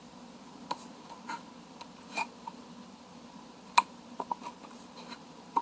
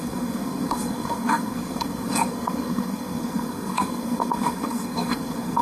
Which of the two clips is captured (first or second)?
first